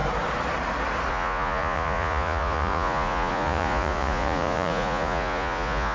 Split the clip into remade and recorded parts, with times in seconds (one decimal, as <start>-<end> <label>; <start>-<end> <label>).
0.0-1.1 recorded; 1.1-5.9 remade